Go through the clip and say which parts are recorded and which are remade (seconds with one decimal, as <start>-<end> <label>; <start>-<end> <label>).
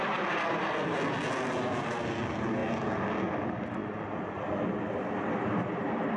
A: 0.0-3.8 recorded; 3.8-4.6 remade; 4.6-6.2 recorded